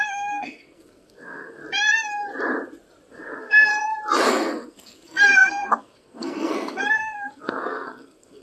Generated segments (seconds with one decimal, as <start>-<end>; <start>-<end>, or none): 0.0-1.6; 3.1-3.7; 4.3-8.4